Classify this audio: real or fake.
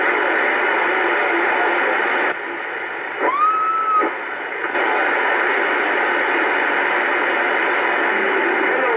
real